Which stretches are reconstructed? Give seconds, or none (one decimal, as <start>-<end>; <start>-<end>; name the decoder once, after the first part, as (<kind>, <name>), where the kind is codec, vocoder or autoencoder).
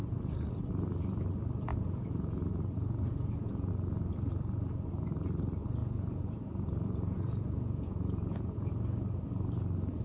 1.7-3.7 (vocoder, Vocos); 5.8-8.7